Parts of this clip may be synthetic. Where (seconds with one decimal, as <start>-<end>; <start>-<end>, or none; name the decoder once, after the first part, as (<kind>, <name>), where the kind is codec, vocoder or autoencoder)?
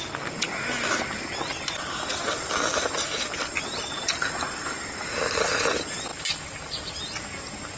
none